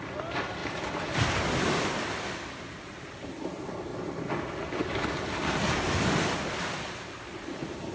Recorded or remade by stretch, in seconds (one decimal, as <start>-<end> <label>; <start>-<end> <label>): 0.0-7.9 recorded